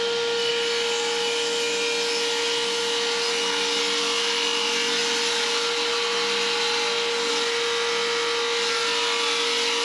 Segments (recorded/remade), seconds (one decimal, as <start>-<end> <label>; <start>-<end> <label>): 0.0-9.8 recorded